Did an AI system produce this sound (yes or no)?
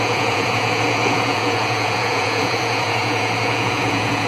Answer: yes